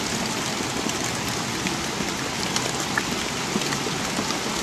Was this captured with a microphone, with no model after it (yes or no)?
yes